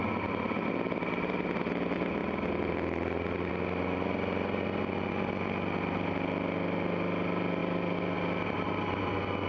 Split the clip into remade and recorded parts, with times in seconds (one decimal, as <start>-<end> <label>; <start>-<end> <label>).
0.0-9.5 recorded